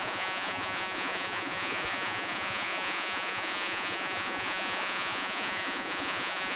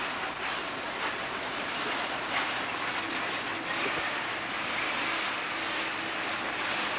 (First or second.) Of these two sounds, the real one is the second